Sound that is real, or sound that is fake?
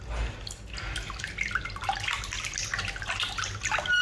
real